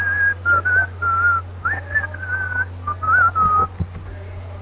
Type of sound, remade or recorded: recorded